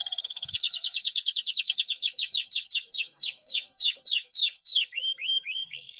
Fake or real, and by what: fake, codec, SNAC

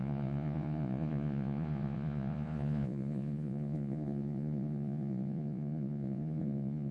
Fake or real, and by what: fake, vocoder, Vocos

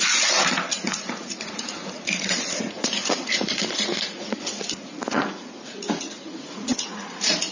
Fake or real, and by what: fake, vocoder, Vocos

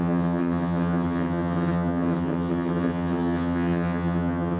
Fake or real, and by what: fake, vocoder, HiFi-GAN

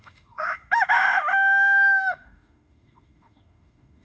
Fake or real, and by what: fake, autoencoder, DAC-VAE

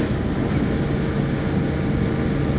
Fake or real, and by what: real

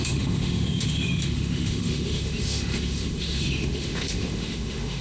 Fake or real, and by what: fake, autoencoder, DAC-VAE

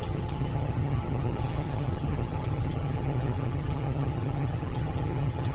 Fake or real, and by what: fake, vocoder, HiFi-GAN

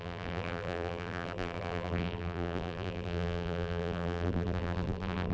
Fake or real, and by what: fake, vocoder, BigVGAN v2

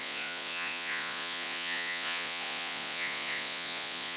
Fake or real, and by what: fake, vocoder, Vocos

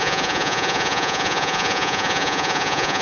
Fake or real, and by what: fake, vocoder, Vocos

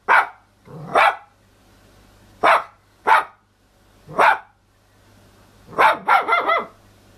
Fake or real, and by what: real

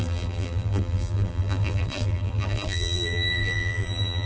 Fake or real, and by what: fake, vocoder, BigVGAN v2